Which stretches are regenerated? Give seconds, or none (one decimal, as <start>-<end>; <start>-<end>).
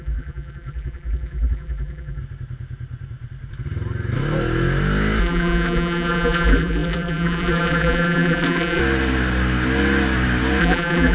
0.0-2.2; 5.2-8.8; 10.6-11.1